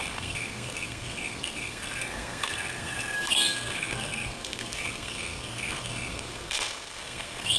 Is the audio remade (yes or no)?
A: yes